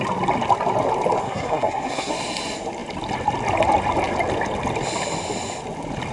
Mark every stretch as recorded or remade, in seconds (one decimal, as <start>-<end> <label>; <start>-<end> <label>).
0.0-1.2 recorded; 1.2-2.1 remade; 2.1-6.1 recorded